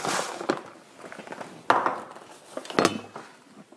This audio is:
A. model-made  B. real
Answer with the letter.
B